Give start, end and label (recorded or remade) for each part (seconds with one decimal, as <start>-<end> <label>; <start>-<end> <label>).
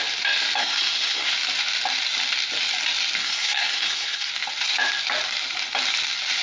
0.0-0.6 recorded; 0.6-1.3 remade; 1.3-3.2 recorded; 3.2-4.3 remade; 4.3-6.4 recorded